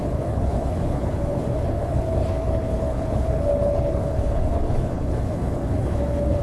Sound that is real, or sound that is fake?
fake